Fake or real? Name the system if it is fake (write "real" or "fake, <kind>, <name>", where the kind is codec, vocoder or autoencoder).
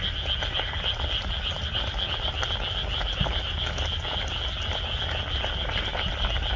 real